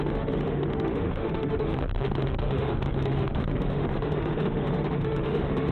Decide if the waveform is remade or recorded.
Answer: remade